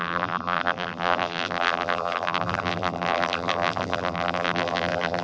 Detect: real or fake fake